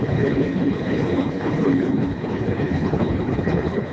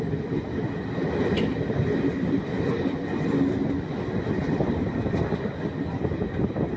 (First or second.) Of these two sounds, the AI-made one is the first